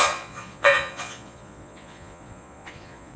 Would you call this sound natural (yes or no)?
no